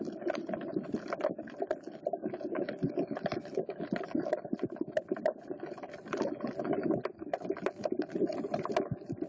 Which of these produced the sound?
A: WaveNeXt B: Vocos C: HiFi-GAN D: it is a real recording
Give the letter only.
D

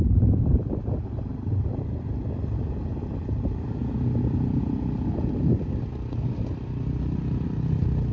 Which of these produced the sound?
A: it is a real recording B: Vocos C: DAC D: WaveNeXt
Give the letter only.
A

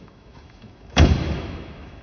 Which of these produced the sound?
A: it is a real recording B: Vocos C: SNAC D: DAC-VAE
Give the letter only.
D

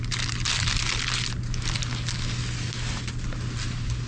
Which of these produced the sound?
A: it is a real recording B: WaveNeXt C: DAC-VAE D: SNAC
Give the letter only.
A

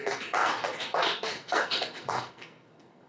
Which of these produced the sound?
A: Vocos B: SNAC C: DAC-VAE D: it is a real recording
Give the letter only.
B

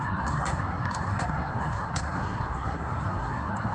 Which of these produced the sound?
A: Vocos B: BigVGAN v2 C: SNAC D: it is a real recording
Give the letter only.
C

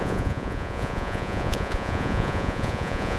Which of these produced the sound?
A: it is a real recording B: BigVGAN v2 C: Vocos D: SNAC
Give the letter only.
C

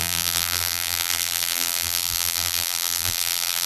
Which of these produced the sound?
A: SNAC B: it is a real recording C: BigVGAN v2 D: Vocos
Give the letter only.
C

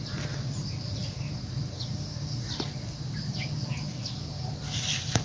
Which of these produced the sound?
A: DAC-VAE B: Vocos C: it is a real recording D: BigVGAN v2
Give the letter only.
C